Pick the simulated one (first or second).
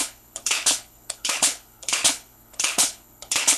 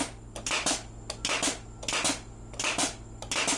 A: first